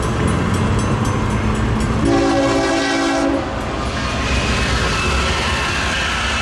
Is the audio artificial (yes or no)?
no